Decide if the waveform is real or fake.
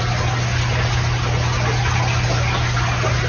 real